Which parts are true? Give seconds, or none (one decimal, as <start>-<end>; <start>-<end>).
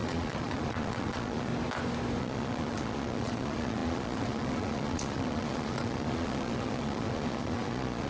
1.5-2.2